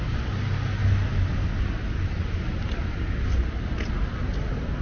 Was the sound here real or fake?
real